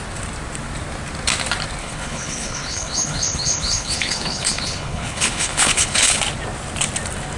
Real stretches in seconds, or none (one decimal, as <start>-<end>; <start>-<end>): 0.0-1.8; 6.2-7.4